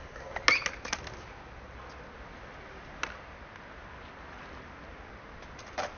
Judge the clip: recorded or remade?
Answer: recorded